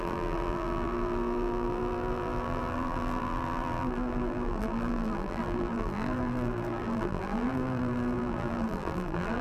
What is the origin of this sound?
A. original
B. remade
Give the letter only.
B